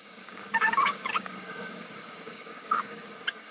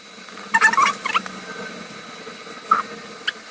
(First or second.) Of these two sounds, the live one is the second